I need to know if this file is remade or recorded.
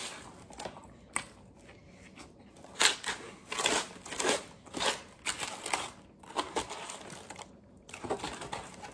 recorded